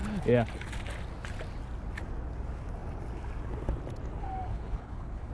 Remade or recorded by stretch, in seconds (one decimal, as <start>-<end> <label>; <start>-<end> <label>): 0.0-4.5 recorded; 4.5-5.3 remade